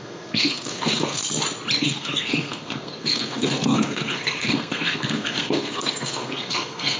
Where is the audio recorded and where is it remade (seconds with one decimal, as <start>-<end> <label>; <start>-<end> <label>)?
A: 0.0-1.2 remade; 1.2-1.8 recorded; 1.8-7.0 remade